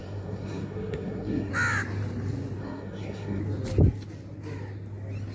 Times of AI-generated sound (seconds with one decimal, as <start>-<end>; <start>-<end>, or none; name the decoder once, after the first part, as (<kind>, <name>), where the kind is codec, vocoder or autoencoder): 0.0-1.5 (codec, SNAC); 2.6-3.4